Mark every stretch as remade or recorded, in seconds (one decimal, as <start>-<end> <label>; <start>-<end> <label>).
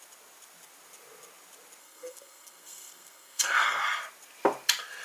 0.0-1.8 recorded; 1.8-3.8 remade; 3.8-5.0 recorded